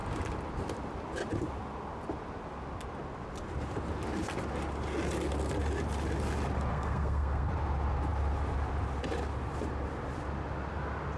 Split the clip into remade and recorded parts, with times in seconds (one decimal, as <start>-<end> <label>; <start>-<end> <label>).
0.0-6.7 recorded; 6.7-7.5 remade; 7.5-11.2 recorded